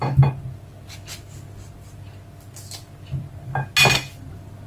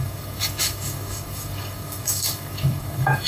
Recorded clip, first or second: first